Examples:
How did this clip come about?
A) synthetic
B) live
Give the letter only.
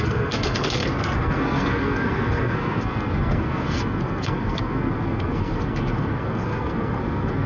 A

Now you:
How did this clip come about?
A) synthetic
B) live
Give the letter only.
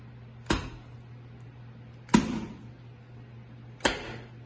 B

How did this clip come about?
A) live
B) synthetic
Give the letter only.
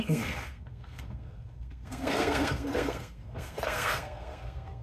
B